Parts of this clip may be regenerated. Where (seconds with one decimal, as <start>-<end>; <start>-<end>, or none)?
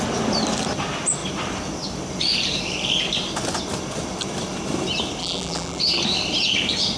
5.2-5.8